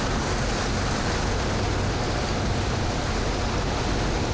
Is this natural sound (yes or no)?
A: yes